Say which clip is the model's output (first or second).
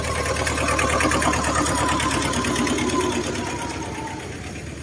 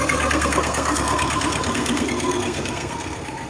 second